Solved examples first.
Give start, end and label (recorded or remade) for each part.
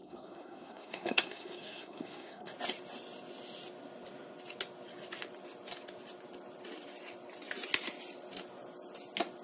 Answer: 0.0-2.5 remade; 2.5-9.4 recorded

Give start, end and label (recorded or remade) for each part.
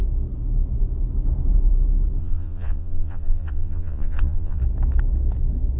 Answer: 0.0-2.2 recorded; 2.2-4.6 remade; 4.6-5.8 recorded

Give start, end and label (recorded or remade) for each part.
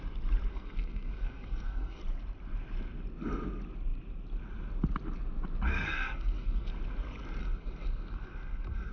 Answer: 0.0-0.5 recorded; 0.5-2.0 remade; 2.0-5.7 recorded; 5.7-6.7 remade; 6.7-7.4 recorded; 7.4-8.9 remade